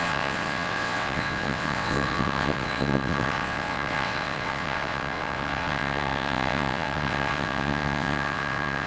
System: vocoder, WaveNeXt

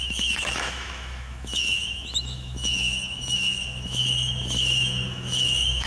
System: autoencoder, DAC-VAE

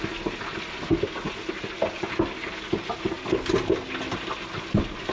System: none